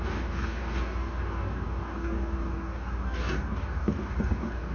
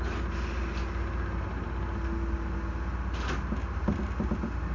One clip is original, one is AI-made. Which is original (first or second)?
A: second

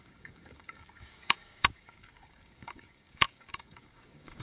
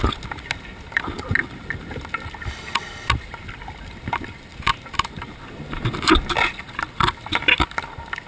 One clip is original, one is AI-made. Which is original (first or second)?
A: second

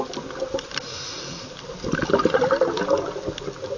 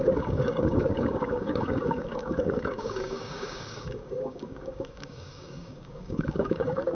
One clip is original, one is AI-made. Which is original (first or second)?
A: first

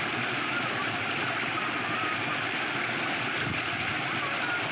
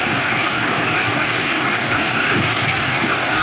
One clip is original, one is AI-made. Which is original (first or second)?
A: first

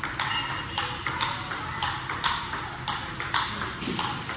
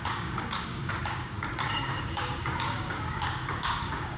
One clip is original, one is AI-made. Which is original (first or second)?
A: first